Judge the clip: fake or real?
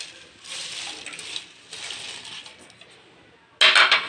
real